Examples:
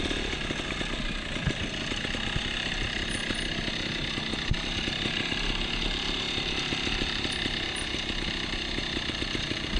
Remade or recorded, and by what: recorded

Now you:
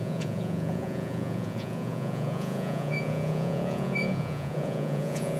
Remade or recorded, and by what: remade, vocoder, Vocos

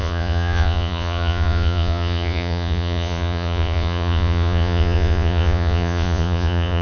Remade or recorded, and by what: remade, vocoder, Vocos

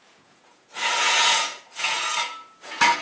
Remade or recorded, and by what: remade, vocoder, Vocos